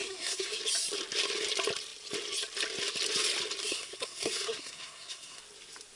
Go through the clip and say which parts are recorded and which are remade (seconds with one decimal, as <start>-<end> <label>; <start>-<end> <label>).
0.0-0.6 remade; 0.6-3.6 recorded; 3.6-5.4 remade; 5.4-6.0 recorded